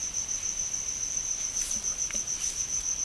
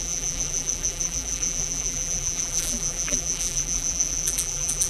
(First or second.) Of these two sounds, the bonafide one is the first